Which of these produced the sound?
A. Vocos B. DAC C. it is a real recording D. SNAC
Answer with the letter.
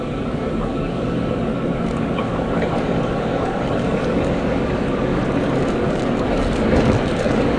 B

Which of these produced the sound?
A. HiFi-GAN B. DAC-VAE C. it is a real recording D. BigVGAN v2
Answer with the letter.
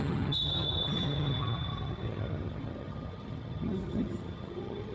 A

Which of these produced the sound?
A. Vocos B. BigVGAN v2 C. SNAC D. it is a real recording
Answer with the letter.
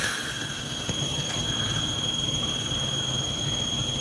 D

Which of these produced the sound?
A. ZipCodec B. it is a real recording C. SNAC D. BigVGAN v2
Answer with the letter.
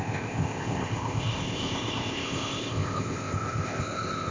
A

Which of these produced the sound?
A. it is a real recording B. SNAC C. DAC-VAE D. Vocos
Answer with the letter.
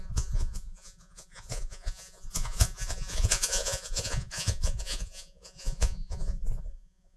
D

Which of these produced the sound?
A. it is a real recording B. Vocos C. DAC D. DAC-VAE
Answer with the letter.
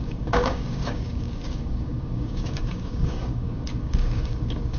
C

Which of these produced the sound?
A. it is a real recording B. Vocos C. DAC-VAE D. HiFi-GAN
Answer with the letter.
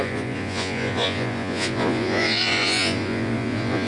B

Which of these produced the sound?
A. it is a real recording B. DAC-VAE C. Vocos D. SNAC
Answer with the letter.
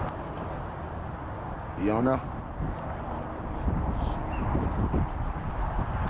A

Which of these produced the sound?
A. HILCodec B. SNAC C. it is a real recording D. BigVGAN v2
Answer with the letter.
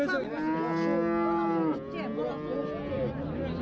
C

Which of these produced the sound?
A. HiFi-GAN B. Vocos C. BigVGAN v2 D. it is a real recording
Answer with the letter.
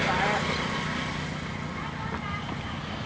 D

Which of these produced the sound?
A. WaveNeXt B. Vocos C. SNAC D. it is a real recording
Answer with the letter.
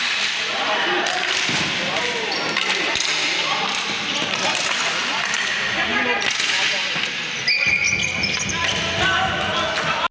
D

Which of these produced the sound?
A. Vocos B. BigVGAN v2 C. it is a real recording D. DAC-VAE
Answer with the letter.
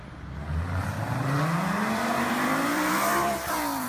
B